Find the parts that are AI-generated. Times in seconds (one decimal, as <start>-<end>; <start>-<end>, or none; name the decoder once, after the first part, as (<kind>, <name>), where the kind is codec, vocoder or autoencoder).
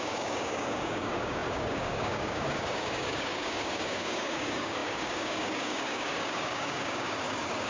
0.0-7.7 (codec, DAC)